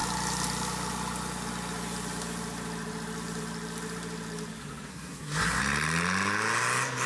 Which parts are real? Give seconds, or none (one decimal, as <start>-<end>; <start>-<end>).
0.0-4.9; 5.6-7.1